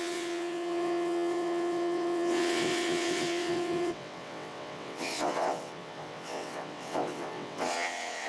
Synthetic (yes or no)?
yes